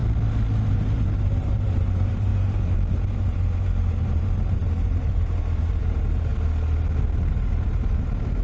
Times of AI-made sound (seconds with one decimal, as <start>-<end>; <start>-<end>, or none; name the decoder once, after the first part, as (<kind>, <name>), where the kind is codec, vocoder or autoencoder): 0.7-6.3 (vocoder, BigVGAN v2); 7.3-8.4